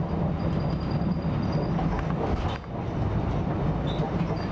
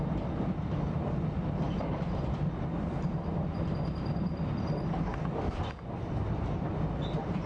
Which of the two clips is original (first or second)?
first